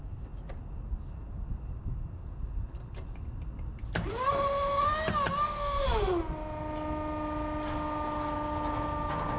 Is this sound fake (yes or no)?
no